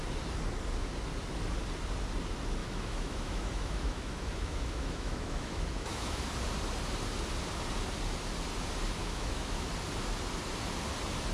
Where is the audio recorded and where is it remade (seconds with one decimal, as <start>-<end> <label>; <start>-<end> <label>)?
0.0-2.6 recorded; 2.6-6.2 remade; 6.2-9.0 recorded; 9.0-9.7 remade; 9.7-11.3 recorded